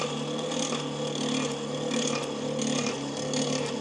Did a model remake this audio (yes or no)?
no